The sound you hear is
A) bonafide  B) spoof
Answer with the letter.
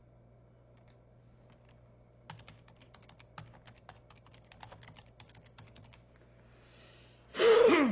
A